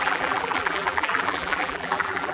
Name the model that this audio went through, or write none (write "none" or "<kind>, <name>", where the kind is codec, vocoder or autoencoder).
vocoder, BigVGAN v2